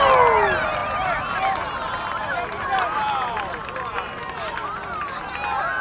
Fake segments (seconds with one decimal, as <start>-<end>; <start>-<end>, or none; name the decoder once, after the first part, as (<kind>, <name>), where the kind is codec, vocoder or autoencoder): none